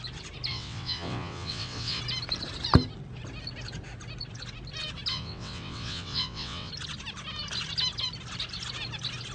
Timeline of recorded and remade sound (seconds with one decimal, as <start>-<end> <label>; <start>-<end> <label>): 0.0-0.5 recorded; 0.5-2.0 remade; 2.0-5.1 recorded; 5.1-6.7 remade; 6.7-9.3 recorded